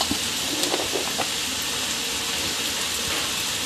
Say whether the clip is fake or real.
real